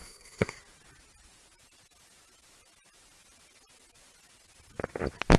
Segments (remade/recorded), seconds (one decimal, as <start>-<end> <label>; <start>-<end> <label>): 0.0-0.6 remade; 0.6-5.4 recorded